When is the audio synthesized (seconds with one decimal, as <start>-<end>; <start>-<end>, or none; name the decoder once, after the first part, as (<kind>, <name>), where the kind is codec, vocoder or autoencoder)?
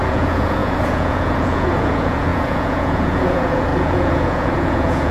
0.0-5.1 (vocoder, Vocos)